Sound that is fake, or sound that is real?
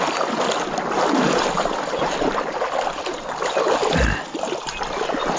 real